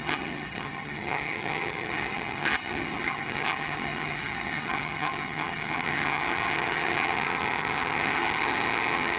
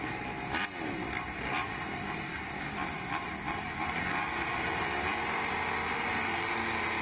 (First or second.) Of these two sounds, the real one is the second